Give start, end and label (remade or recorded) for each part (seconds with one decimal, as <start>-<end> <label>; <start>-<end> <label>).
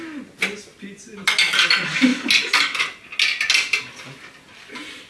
0.0-5.1 recorded